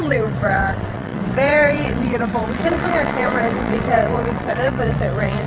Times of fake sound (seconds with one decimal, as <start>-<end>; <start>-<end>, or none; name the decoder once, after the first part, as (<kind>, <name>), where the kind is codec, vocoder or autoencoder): 0.0-5.5 (vocoder, WaveNeXt)